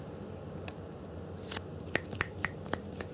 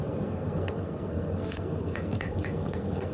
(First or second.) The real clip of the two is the first